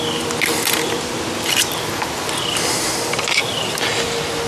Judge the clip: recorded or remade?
recorded